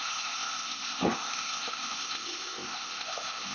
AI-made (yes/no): yes